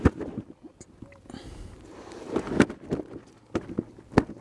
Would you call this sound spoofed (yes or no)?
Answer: no